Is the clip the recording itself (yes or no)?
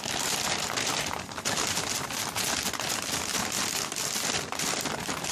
yes